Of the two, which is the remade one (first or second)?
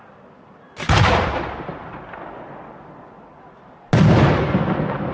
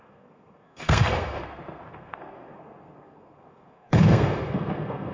second